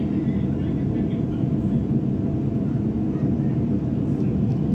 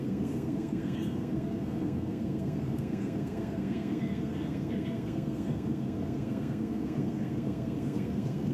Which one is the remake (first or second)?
second